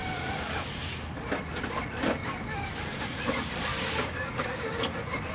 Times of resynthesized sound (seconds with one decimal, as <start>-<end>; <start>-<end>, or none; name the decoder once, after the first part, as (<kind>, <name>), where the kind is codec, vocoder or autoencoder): 3.7-4.7 (codec, DAC)